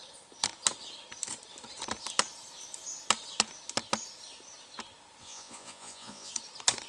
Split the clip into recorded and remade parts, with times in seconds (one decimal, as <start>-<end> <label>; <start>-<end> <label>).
0.0-5.2 recorded; 5.2-6.3 remade; 6.3-6.9 recorded